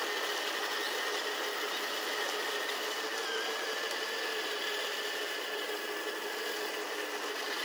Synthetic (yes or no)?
no